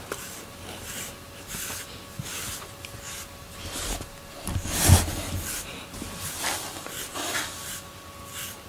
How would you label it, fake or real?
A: real